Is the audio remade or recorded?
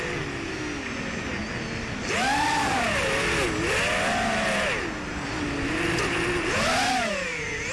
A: recorded